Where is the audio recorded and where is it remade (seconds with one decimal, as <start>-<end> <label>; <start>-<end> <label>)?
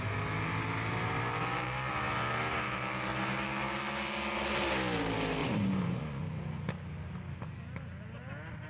0.0-5.4 recorded; 5.4-6.2 remade; 6.2-8.7 recorded